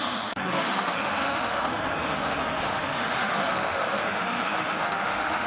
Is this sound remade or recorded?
remade